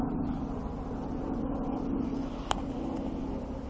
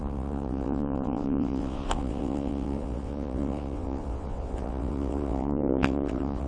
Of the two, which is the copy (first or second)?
second